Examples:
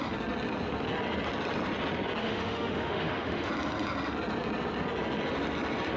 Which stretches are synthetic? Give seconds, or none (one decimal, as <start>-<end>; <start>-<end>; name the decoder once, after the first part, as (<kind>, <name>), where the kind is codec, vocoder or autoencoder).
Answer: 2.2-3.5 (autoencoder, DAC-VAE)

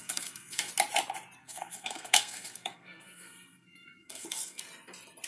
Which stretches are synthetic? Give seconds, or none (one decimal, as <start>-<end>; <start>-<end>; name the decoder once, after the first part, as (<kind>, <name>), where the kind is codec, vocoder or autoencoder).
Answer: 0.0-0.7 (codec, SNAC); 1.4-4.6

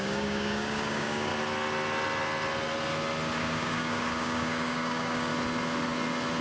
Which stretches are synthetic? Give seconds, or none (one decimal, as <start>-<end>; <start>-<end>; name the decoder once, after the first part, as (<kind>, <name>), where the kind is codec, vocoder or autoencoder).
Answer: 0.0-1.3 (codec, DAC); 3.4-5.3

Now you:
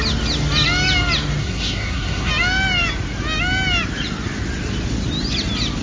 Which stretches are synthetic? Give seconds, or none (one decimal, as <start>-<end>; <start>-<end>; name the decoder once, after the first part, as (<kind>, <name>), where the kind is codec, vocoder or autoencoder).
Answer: 1.4-2.3 (codec, SNAC)